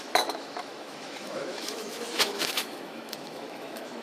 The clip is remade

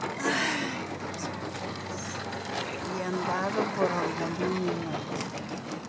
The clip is recorded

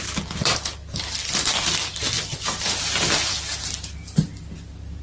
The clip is recorded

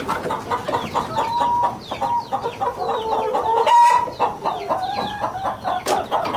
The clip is recorded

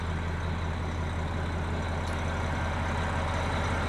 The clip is recorded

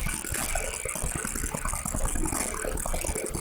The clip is recorded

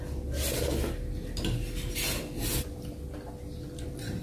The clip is recorded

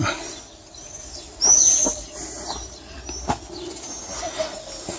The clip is recorded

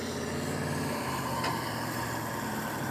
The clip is recorded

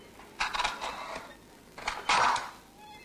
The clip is recorded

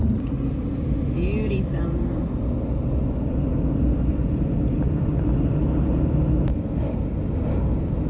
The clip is recorded